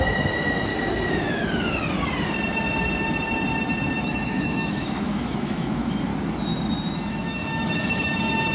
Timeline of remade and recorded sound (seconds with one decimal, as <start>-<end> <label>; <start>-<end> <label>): 0.0-0.7 remade; 0.7-4.0 recorded; 4.0-6.1 remade; 6.1-7.1 recorded; 7.1-8.5 remade